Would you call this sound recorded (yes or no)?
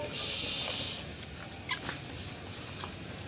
yes